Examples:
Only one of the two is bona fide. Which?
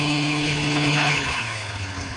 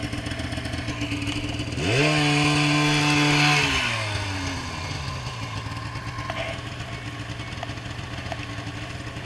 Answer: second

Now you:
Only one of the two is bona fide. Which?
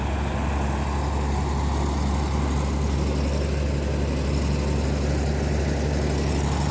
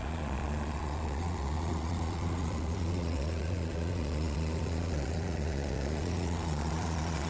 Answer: first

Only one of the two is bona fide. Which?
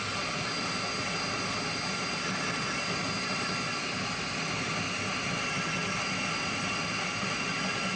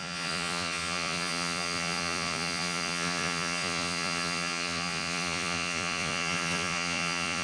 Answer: first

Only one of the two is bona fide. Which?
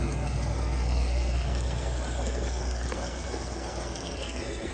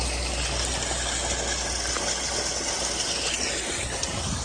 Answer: second